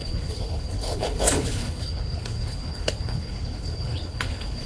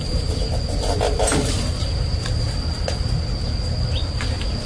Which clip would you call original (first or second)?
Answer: second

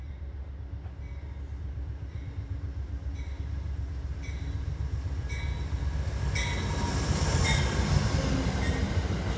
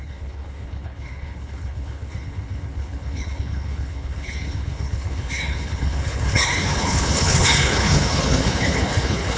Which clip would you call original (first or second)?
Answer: first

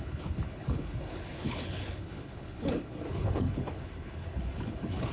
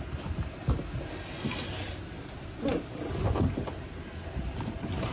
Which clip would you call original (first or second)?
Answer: second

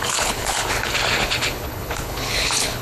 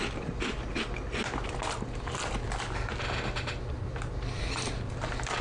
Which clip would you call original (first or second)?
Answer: second